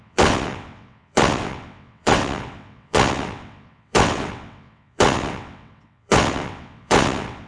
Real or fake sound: fake